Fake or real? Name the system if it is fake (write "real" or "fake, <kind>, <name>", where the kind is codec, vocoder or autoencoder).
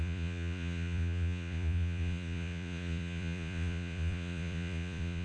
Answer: fake, vocoder, Vocos